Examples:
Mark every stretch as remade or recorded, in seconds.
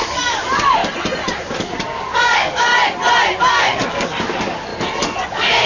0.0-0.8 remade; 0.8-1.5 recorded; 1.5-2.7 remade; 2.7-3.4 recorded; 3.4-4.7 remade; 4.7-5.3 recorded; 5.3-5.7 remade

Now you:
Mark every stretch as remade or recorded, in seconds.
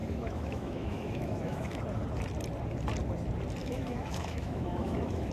0.0-1.8 remade; 1.8-3.6 recorded; 3.6-5.3 remade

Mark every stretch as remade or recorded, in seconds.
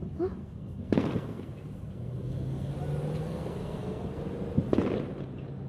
0.0-0.4 recorded; 0.4-2.7 remade; 2.7-3.2 recorded; 3.2-4.2 remade; 4.2-5.7 recorded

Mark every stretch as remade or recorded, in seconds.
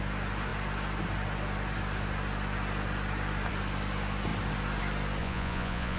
0.0-5.2 recorded; 5.2-6.0 remade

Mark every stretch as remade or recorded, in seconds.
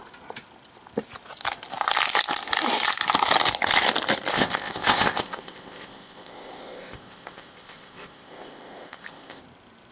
0.0-4.3 recorded; 4.3-9.4 remade; 9.4-9.9 recorded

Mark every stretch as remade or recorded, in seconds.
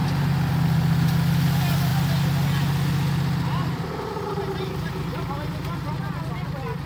0.0-6.9 recorded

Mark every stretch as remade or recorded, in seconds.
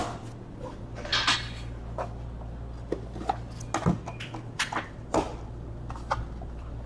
0.0-0.6 recorded; 0.6-1.1 remade; 1.1-4.0 recorded; 4.0-6.9 remade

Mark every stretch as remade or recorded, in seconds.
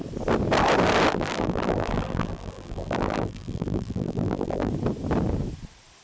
0.0-1.1 recorded; 1.1-4.7 remade; 4.7-6.0 recorded